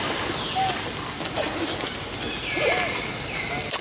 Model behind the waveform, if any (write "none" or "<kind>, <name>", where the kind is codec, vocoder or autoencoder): none